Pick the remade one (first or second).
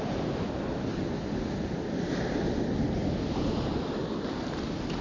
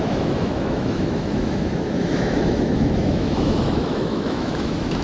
second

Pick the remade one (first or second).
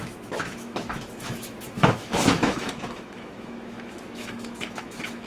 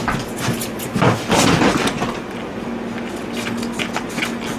first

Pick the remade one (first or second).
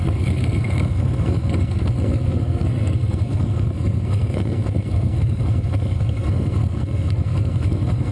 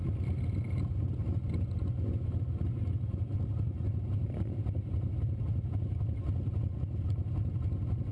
first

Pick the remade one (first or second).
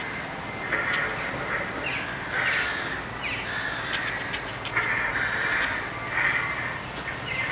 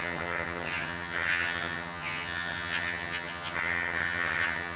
second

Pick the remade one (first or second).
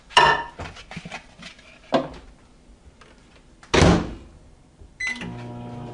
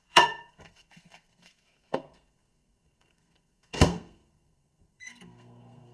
second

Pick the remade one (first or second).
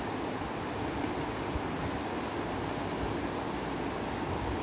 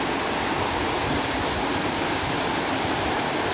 second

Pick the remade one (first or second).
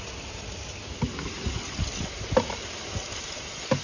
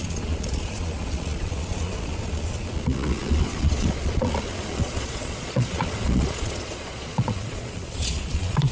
second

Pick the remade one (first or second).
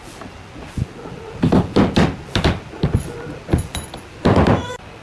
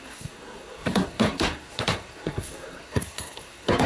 second